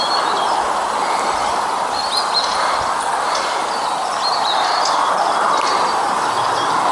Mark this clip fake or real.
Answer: real